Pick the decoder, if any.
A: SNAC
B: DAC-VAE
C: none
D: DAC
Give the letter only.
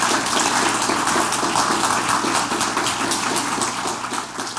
C